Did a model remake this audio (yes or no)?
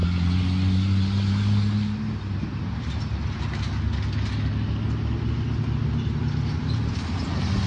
no